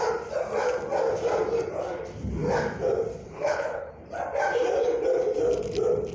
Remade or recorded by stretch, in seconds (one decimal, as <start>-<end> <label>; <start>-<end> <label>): 0.0-3.2 recorded; 3.2-3.9 remade; 3.9-6.1 recorded